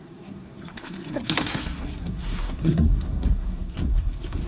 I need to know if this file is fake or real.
fake